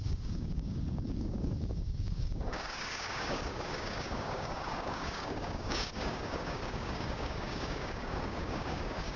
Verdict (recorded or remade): remade